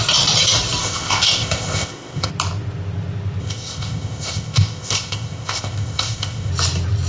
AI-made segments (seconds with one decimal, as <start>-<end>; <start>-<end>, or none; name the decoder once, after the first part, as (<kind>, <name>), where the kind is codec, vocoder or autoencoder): 0.8-2.3 (codec, ZipCodec); 3.4-6.5